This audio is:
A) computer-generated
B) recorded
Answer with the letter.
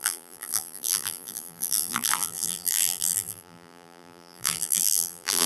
A